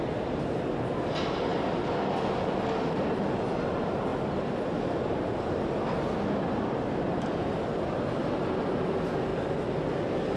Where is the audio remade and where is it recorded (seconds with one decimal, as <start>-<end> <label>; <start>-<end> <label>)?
0.0-10.4 recorded